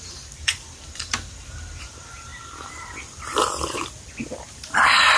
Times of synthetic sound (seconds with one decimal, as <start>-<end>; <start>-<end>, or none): 0.0-2.3